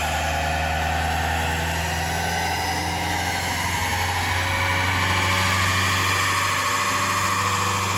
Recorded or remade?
recorded